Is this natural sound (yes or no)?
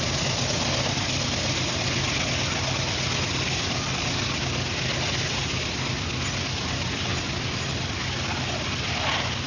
yes